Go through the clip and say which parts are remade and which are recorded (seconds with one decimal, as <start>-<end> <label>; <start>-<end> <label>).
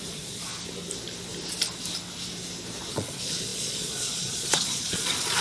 0.0-0.5 remade; 0.5-2.9 recorded; 2.9-5.4 remade